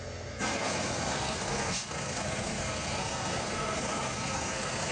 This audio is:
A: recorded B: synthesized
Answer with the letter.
B